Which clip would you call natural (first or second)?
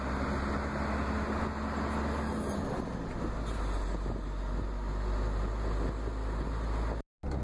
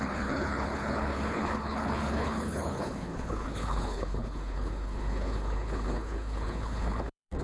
first